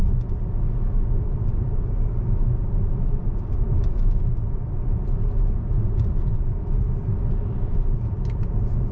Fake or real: real